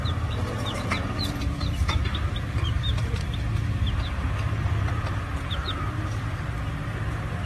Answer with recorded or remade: remade